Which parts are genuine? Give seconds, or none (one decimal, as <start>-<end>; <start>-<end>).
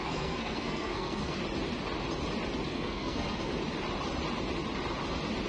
1.4-2.7; 3.5-5.5